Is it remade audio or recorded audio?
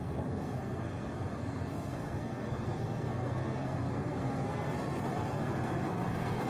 remade